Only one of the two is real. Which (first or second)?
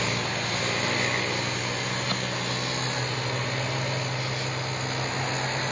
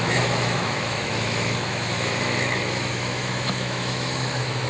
first